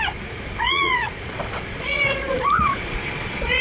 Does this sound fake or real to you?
fake